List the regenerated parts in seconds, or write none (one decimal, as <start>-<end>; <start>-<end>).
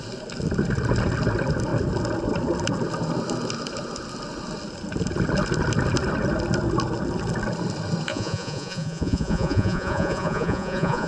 8.1-11.1